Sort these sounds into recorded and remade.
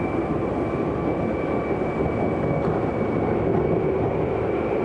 recorded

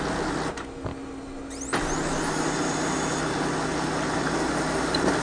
recorded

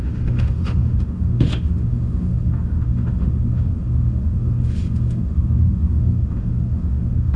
remade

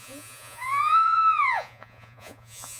remade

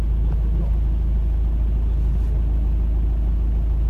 recorded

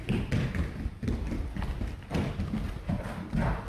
recorded